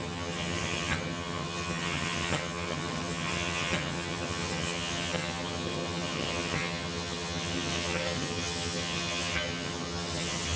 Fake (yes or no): yes